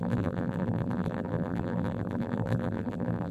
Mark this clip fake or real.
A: fake